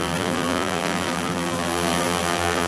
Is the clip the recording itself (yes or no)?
no